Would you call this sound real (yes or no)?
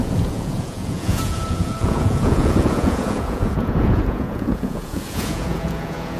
no